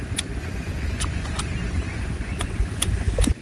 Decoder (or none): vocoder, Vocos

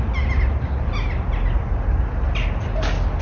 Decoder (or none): none